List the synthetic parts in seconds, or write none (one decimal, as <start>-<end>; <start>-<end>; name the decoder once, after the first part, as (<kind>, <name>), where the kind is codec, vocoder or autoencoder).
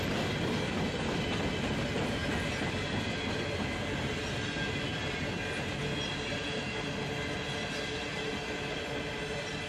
none